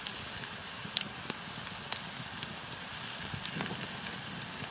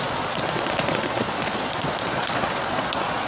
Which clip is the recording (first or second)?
first